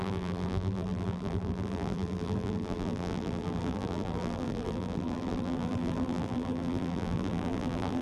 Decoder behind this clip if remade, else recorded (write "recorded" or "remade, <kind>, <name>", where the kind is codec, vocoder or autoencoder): remade, vocoder, BigVGAN v2